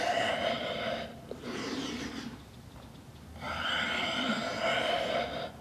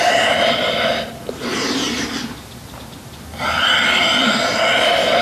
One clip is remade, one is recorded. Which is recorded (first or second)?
second